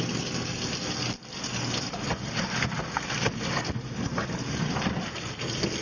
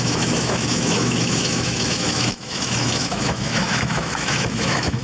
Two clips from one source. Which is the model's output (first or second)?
second